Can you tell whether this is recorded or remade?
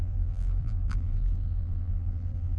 remade